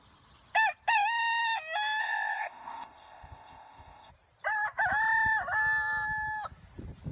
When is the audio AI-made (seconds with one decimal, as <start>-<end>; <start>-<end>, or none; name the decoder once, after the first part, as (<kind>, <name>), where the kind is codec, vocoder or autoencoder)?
2.0-4.1 (codec, ZipCodec)